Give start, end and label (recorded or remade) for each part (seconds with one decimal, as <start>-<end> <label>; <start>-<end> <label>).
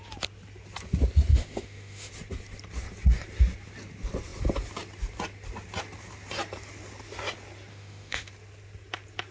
0.0-1.3 recorded; 1.3-2.1 remade; 2.1-7.7 recorded; 7.7-8.3 remade; 8.3-9.3 recorded